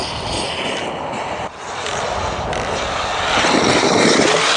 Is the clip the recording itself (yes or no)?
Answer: yes